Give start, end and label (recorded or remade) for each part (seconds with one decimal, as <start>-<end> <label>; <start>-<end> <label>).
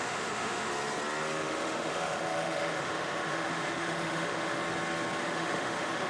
0.0-0.7 remade; 0.7-1.4 recorded; 1.4-4.6 remade; 4.6-5.2 recorded; 5.2-6.1 remade